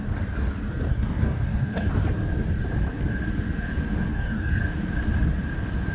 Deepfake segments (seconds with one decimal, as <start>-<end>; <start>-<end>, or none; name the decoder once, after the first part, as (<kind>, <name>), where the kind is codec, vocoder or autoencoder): 0.9-1.9 (codec, DAC); 4.1-4.6